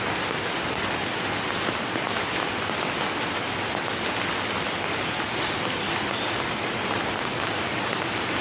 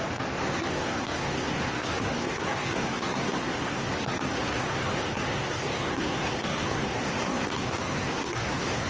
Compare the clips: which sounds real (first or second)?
first